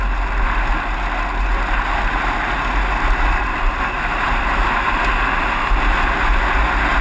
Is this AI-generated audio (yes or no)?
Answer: no